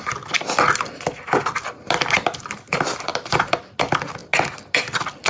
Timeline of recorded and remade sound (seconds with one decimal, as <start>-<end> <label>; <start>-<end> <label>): 0.0-5.3 recorded